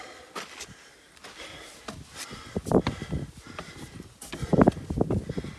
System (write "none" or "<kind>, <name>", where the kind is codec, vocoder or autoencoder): none